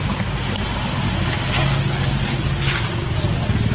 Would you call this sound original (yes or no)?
yes